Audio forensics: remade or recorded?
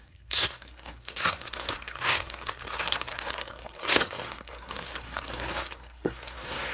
remade